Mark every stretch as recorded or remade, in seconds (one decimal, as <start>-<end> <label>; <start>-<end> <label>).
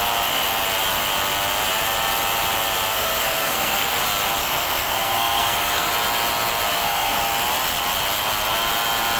0.0-2.9 recorded; 2.9-4.0 remade; 4.0-4.4 recorded; 4.4-5.9 remade; 5.9-6.7 recorded; 6.7-7.2 remade; 7.2-9.2 recorded